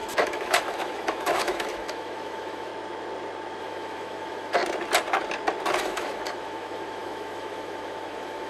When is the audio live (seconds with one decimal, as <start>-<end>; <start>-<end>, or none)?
2.7-3.6; 4.6-5.8